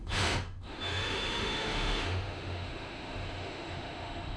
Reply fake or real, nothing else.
fake